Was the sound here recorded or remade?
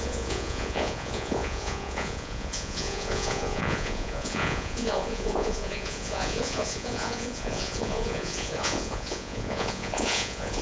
remade